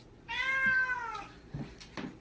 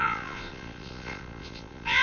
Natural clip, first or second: first